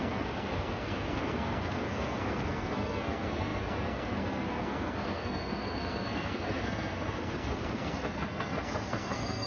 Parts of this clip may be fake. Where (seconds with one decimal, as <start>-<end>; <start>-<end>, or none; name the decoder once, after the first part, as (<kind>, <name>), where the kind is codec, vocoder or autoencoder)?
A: 0.0-9.5 (codec, SNAC)